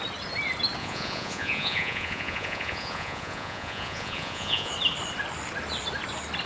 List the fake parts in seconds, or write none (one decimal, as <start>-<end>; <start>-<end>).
0.8-4.7